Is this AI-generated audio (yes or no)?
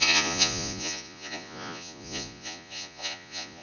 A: yes